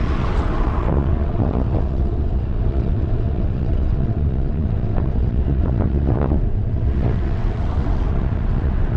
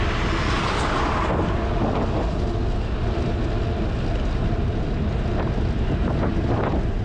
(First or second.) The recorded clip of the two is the second